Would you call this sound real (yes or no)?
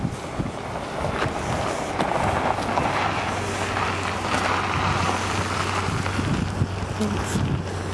yes